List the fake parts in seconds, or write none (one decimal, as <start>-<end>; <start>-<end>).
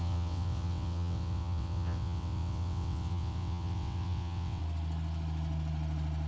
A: 0.0-4.6